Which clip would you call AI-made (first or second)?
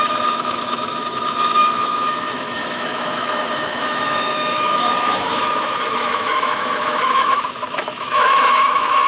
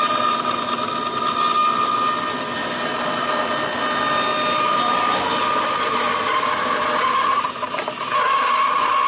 first